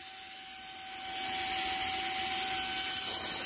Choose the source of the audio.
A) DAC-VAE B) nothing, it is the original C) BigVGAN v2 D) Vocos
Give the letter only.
B